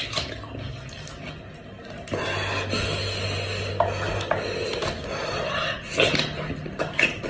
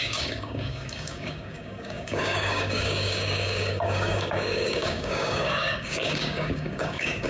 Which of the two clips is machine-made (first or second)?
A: second